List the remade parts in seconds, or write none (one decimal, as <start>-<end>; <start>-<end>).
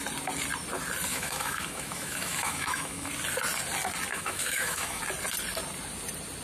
1.1-3.1; 4.1-5.0